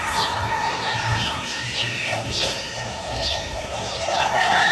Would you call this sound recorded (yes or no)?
no